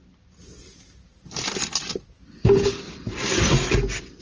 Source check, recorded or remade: recorded